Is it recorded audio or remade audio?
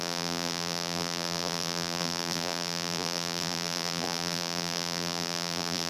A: remade